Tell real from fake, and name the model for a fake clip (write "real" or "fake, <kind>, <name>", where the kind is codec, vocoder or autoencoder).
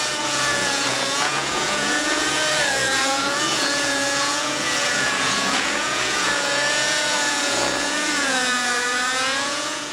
fake, vocoder, Vocos